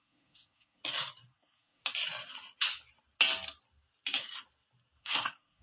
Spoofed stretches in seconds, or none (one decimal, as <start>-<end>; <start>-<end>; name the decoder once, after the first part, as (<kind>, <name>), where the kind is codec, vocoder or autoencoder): 0.0-0.8 (codec, SNAC); 1.3-1.8; 5.0-5.6